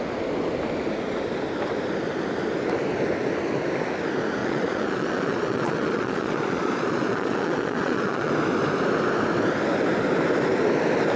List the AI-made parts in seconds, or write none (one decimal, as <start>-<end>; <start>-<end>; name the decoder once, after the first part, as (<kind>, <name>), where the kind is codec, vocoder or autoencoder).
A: 4.4-8.3 (vocoder, Vocos)